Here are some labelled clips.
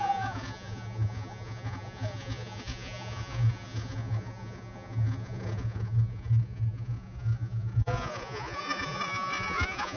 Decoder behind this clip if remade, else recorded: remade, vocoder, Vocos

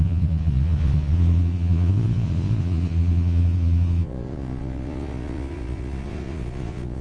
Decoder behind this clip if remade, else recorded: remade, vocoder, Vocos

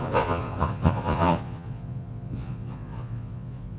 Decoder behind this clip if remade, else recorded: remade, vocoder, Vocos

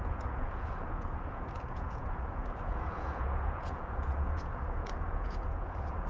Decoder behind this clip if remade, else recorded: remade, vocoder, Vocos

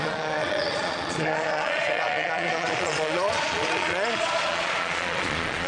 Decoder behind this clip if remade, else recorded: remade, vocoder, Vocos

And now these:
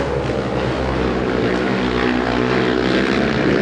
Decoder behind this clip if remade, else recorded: recorded